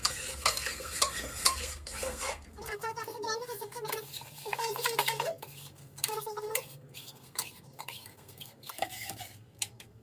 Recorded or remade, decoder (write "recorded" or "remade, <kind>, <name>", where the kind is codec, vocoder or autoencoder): remade, codec, SNAC